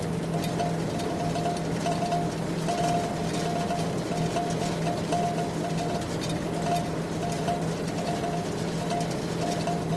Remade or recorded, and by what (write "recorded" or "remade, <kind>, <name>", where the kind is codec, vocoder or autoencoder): recorded